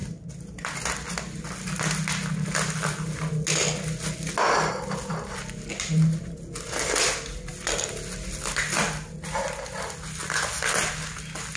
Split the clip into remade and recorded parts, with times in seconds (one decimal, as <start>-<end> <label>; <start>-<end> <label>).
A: 0.0-11.6 recorded